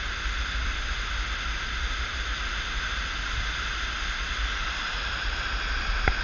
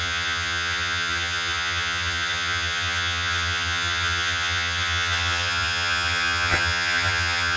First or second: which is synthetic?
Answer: second